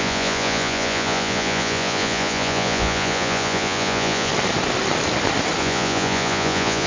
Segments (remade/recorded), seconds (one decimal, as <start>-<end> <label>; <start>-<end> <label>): 0.0-4.3 remade; 4.3-5.6 recorded; 5.6-6.9 remade